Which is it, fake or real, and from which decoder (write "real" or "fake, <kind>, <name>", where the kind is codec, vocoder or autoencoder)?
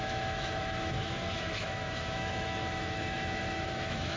fake, autoencoder, DAC-VAE